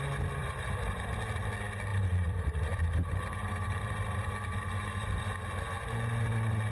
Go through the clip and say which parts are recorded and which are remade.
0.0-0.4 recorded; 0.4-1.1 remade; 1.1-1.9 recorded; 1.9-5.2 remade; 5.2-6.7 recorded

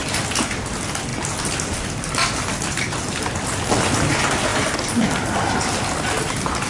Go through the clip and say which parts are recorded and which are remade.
0.0-6.7 recorded

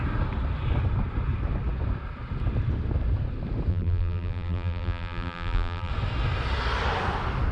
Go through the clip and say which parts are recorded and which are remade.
0.0-3.7 recorded; 3.7-5.9 remade; 5.9-7.5 recorded